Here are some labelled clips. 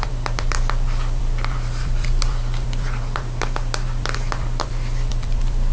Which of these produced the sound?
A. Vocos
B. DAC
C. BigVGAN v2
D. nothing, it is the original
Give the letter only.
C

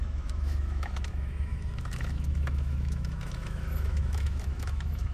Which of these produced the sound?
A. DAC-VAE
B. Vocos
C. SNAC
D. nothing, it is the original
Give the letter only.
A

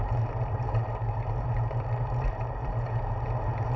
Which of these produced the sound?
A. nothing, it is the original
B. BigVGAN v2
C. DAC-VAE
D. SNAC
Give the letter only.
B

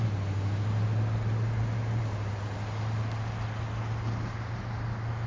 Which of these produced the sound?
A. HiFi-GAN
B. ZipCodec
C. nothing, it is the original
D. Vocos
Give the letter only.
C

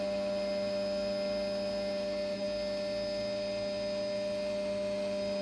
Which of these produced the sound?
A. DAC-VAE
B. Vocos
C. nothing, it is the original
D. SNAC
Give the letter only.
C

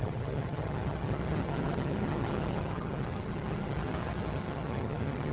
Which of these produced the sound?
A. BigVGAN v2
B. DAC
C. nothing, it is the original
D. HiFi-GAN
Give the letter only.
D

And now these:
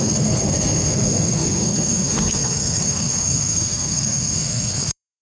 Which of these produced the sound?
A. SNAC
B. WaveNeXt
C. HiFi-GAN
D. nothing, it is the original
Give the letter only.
A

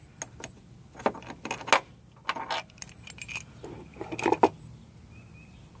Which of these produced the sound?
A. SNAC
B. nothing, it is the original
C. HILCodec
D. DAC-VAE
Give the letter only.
B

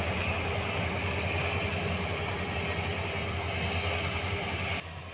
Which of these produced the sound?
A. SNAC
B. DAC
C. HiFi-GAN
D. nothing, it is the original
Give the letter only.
D